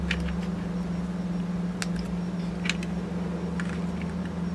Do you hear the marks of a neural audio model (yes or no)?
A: no